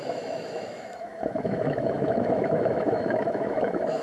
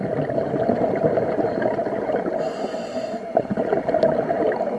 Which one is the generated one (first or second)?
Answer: first